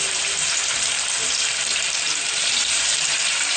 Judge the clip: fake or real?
fake